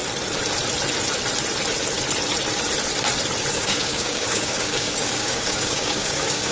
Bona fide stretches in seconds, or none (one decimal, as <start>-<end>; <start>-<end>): 0.0-3.5